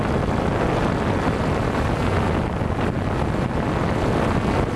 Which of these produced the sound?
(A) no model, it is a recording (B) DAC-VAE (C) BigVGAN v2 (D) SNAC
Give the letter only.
A